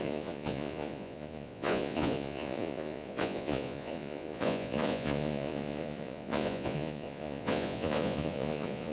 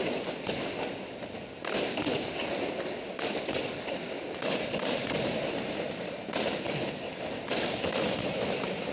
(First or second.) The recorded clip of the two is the second